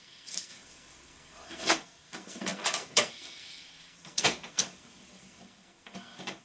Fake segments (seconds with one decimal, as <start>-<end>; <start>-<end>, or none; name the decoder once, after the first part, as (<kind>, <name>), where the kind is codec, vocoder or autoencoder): 0.0-6.4 (codec, SNAC)